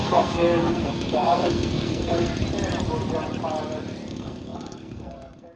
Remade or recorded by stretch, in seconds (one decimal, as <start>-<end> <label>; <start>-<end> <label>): 0.0-2.3 remade; 2.3-4.1 recorded; 4.1-5.6 remade